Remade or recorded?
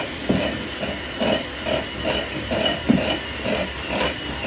remade